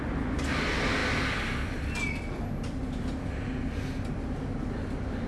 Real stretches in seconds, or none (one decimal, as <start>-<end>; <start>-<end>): 0.0-5.3